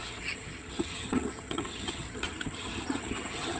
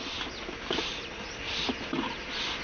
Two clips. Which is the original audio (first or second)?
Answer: second